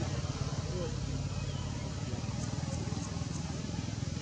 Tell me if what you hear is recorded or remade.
recorded